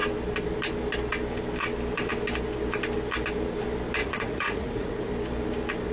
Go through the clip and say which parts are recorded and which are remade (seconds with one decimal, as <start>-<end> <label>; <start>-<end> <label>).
0.0-4.0 recorded; 4.0-5.1 remade; 5.1-5.9 recorded